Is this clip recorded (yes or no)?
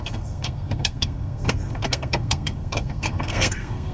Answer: no